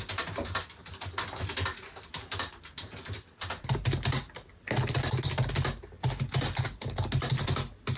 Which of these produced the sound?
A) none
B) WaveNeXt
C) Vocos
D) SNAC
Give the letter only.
A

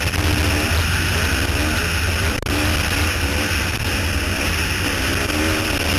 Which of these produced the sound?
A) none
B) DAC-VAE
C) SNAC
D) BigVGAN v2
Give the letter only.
A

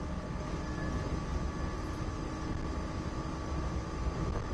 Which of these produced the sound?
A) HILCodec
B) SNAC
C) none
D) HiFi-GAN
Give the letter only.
C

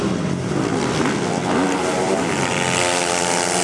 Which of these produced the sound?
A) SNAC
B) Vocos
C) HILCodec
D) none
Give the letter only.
D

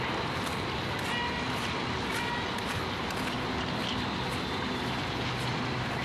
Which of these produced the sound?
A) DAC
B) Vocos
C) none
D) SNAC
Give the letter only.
C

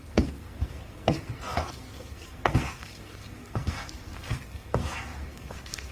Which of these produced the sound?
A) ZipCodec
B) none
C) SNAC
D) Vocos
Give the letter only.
C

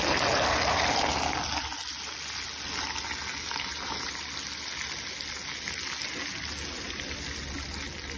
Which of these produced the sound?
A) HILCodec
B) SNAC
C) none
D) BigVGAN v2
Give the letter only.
C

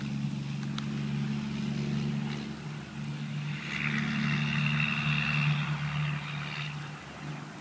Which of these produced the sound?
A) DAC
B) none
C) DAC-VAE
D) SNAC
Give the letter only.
B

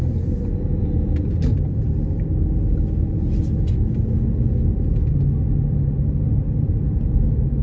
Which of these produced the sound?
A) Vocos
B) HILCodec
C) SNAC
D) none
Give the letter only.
D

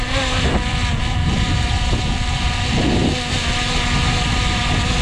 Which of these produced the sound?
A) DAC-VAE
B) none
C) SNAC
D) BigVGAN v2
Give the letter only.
B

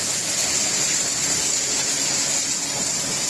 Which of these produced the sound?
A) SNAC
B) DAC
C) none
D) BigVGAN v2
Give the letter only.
C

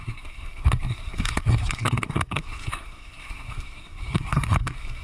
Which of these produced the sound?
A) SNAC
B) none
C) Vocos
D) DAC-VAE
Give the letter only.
A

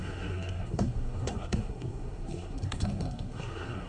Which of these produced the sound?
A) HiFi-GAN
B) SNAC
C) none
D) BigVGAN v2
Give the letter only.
B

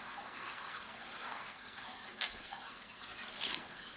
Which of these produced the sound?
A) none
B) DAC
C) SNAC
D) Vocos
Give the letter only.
C